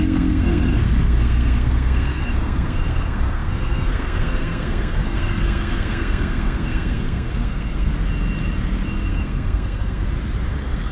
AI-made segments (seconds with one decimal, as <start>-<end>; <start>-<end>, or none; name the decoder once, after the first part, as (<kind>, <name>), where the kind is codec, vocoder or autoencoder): 0.0-7.9 (codec, SNAC); 9.1-10.0; 10.5-10.9